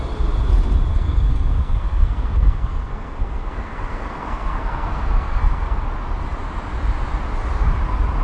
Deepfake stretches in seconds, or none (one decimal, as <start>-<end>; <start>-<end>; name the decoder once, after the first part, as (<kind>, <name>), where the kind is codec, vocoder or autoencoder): 0.9-5.8 (codec, SNAC)